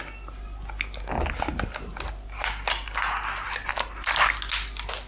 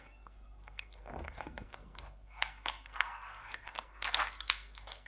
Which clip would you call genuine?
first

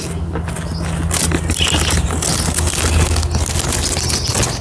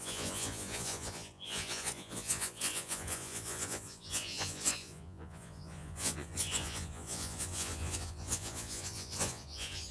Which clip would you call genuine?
first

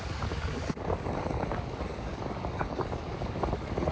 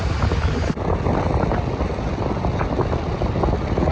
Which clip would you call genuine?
second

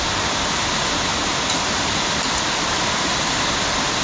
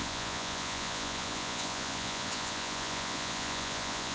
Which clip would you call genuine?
first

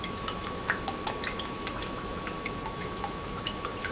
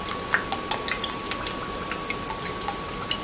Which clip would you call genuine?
second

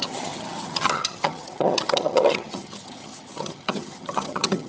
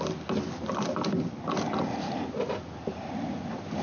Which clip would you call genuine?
second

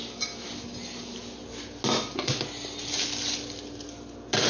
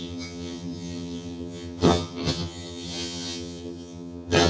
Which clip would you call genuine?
first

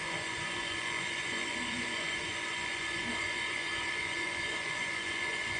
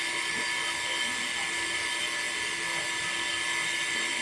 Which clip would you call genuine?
second